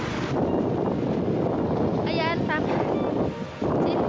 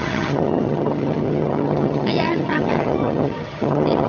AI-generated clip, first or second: second